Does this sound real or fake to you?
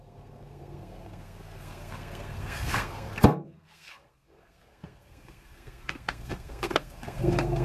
fake